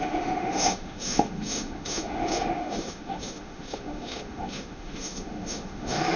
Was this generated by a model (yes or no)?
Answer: yes